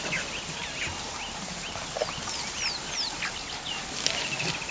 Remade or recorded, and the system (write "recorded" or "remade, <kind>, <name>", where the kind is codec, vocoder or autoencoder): recorded